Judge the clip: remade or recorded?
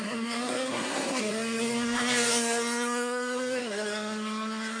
remade